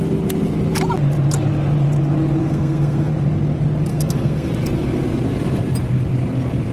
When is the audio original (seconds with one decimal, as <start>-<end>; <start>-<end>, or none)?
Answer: 0.0-2.4; 3.1-3.9; 4.5-6.7